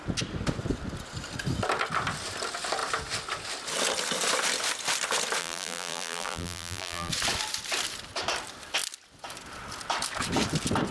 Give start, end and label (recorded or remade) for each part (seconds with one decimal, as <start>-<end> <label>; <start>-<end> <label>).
0.0-5.4 recorded; 5.4-7.1 remade; 7.1-10.9 recorded